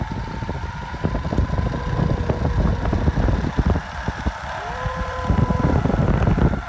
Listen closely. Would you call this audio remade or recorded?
recorded